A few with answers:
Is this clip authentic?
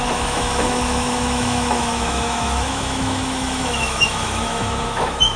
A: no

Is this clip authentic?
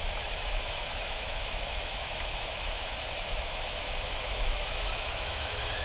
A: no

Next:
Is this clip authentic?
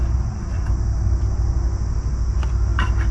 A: yes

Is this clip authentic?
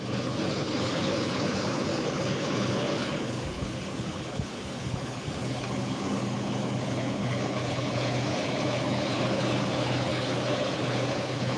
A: no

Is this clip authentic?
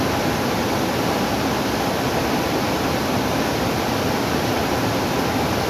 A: yes